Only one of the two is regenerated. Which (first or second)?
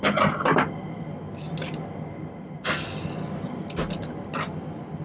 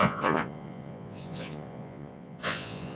second